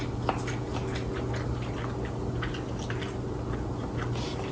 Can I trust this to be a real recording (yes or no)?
yes